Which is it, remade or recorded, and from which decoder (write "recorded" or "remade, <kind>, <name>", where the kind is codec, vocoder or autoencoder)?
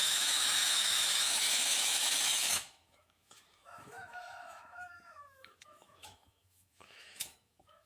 remade, autoencoder, DAC-VAE